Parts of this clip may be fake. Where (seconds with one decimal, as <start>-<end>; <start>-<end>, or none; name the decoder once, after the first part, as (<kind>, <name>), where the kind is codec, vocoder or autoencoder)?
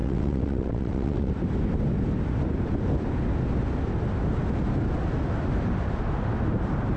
0.0-1.3 (vocoder, WaveNeXt)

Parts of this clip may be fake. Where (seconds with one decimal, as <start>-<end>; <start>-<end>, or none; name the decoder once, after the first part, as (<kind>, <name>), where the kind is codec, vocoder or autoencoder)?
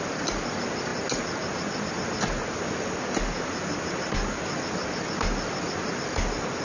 none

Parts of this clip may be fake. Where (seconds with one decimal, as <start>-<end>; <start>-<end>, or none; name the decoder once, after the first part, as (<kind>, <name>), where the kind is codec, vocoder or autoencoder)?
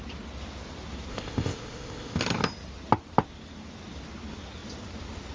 1.1-2.2 (codec, ZipCodec)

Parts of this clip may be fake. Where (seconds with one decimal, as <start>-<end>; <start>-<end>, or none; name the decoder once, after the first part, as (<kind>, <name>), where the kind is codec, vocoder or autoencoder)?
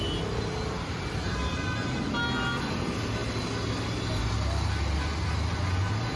none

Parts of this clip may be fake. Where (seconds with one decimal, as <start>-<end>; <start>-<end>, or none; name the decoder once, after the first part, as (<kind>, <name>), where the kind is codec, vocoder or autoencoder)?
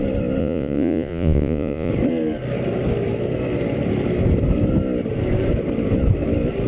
0.4-1.9 (vocoder, Vocos)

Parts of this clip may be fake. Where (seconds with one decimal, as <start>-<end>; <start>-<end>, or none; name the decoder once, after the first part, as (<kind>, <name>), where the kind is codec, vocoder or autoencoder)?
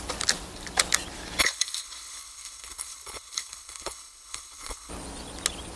1.4-4.9 (codec, HILCodec)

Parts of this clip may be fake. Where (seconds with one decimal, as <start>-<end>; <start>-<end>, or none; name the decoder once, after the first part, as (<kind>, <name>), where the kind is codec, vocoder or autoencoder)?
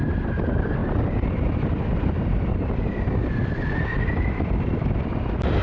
none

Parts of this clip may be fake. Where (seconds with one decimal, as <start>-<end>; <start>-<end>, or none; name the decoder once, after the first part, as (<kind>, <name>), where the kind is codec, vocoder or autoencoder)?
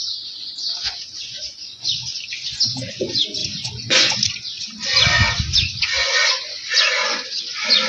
0.0-2.1 (vocoder, Vocos); 2.9-7.9